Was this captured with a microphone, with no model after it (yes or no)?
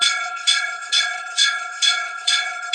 no